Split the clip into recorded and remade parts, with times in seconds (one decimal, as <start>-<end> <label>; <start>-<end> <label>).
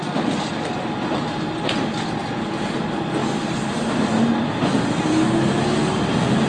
0.0-6.5 recorded